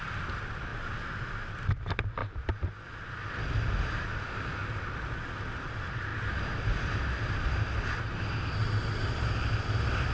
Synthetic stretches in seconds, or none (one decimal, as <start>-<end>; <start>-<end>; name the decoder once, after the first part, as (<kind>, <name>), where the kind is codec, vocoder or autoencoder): 0.0-0.7 (vocoder, BigVGAN v2); 1.5-2.2; 3.3-4.6; 5.4-6.1; 9.4-10.1